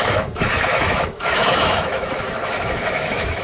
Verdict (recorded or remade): remade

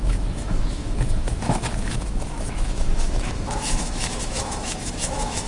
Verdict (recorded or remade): remade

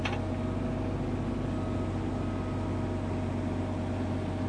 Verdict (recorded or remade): recorded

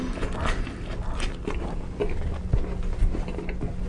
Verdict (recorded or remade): recorded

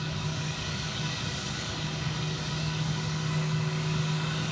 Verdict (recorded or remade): remade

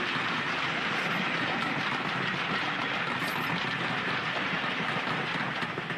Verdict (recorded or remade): recorded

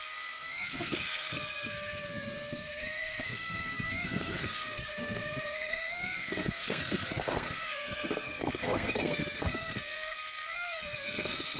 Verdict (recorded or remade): remade